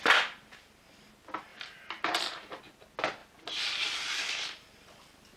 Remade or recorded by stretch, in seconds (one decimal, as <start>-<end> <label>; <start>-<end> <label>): 0.0-1.5 recorded; 1.5-2.6 remade; 2.6-5.4 recorded